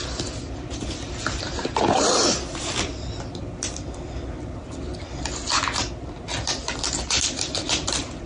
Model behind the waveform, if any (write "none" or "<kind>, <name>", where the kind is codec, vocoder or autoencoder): none